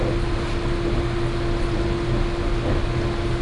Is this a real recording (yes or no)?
yes